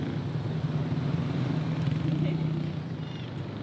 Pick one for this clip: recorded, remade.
recorded